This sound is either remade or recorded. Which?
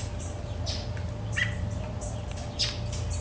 recorded